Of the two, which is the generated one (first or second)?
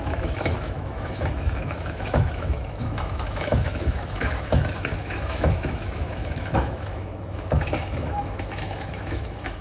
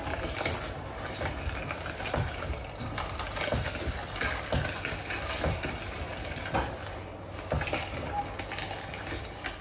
first